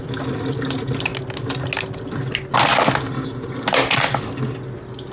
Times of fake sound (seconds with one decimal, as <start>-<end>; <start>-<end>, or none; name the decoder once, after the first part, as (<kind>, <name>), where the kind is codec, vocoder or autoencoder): none